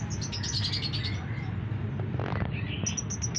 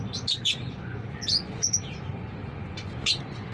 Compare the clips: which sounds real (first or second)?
first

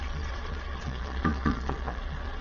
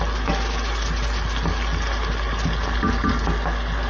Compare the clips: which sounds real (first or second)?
second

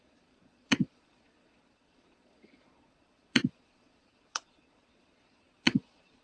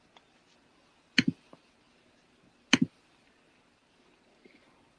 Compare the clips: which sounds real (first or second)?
second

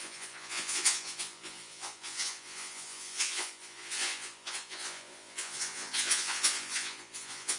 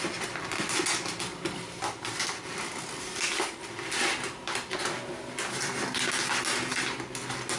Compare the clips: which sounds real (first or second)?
second